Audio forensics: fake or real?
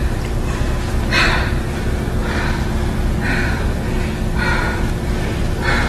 real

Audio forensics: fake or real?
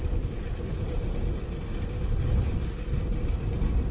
real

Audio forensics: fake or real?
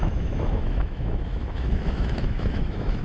fake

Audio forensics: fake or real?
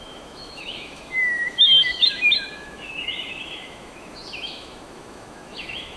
fake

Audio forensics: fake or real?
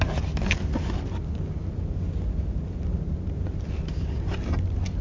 real